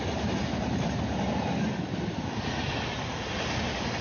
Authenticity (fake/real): real